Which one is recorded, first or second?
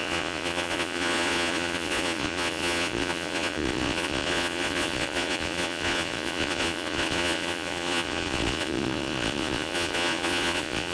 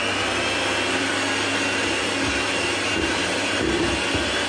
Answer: second